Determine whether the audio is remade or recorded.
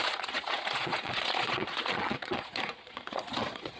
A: remade